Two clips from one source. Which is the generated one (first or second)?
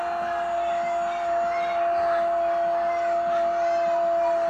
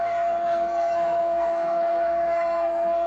second